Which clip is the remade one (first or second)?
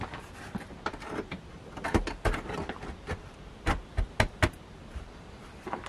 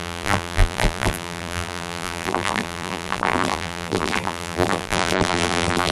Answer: second